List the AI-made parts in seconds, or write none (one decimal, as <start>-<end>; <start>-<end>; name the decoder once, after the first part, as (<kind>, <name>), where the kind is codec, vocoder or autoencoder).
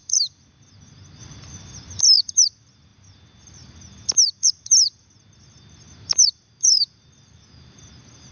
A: 0.0-0.7 (vocoder, BigVGAN v2); 1.2-2.0